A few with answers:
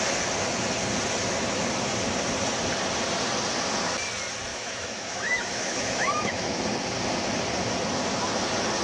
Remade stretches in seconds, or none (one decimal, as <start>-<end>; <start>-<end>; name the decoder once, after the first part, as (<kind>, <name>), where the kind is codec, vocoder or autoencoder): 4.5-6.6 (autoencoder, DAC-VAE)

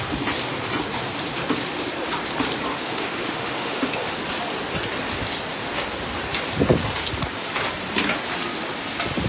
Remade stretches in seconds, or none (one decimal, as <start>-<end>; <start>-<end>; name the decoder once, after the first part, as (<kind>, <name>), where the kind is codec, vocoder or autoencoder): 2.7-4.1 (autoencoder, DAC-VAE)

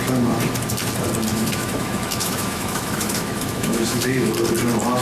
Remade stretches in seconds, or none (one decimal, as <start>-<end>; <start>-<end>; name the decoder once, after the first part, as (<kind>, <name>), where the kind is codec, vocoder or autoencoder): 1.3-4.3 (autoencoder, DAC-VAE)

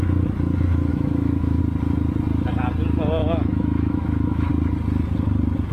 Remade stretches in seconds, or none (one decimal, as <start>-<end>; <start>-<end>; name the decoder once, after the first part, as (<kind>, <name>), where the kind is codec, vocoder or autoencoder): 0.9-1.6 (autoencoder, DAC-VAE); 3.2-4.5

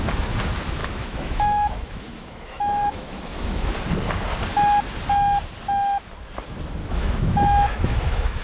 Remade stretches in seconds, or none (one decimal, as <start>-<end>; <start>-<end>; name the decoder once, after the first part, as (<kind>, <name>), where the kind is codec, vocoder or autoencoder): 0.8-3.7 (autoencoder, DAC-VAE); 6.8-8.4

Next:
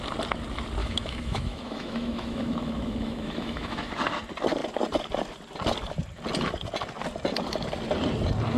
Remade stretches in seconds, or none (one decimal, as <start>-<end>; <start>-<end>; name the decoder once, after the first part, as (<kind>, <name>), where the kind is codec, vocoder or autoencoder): 0.8-3.9 (autoencoder, DAC-VAE)

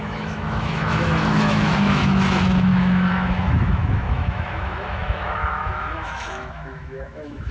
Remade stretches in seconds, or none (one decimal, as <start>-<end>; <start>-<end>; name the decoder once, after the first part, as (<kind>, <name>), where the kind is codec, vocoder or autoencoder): 0.0-7.5 (autoencoder, DAC-VAE)

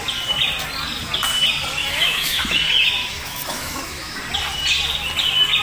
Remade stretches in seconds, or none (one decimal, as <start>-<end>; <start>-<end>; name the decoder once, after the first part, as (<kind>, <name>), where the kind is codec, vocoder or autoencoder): 1.8-2.5 (autoencoder, DAC-VAE); 3.0-4.2